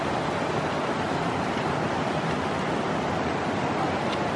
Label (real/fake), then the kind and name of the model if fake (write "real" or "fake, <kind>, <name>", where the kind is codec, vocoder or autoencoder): real